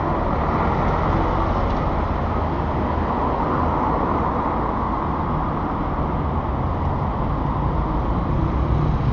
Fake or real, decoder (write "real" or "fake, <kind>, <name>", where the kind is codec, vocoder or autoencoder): real